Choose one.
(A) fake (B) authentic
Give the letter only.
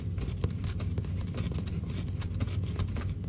B